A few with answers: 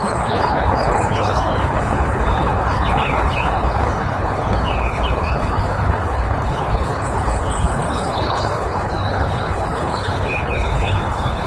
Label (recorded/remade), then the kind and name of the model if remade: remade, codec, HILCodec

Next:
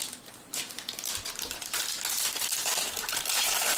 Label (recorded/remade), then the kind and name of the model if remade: remade, vocoder, BigVGAN v2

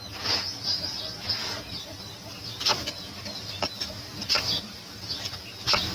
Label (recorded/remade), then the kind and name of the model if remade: recorded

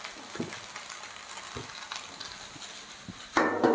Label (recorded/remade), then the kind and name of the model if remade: recorded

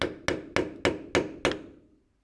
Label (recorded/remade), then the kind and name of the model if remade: recorded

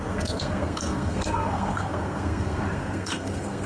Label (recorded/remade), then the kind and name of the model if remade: remade, codec, SNAC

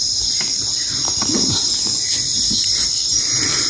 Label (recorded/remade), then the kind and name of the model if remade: remade, vocoder, BigVGAN v2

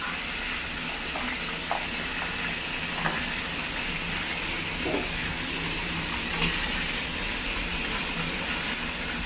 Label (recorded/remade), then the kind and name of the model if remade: recorded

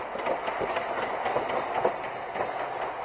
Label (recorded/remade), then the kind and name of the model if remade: recorded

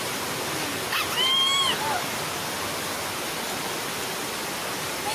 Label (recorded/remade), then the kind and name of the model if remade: recorded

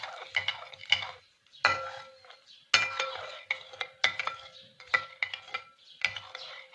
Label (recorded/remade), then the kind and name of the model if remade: recorded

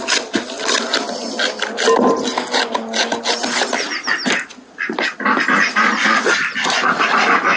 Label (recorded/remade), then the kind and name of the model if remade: recorded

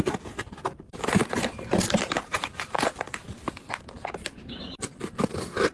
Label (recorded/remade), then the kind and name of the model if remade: remade, vocoder, BigVGAN v2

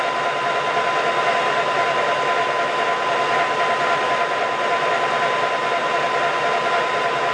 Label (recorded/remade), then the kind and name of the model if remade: recorded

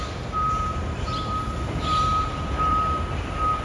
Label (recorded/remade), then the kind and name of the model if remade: remade, vocoder, BigVGAN v2